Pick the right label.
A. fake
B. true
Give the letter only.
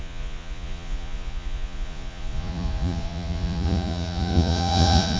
A